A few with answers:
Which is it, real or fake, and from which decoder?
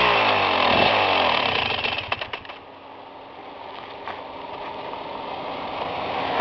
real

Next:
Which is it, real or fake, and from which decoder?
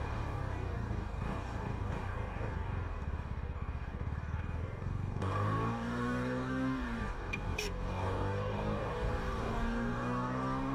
fake, codec, DAC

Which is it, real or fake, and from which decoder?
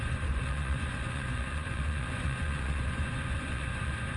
fake, vocoder, Vocos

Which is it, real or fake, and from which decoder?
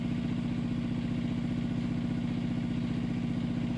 real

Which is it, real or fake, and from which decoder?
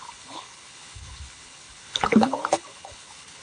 fake, codec, HILCodec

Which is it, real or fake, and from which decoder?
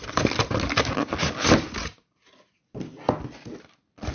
real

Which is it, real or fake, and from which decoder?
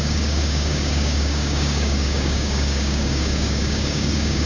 fake, codec, DAC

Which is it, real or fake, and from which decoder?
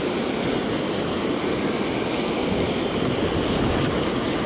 real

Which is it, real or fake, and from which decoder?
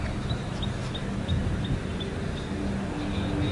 real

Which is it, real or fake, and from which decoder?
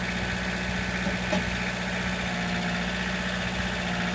real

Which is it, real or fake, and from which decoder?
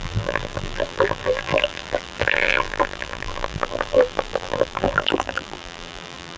fake, vocoder, BigVGAN v2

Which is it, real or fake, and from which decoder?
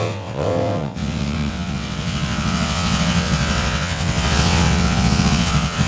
fake, vocoder, WaveNeXt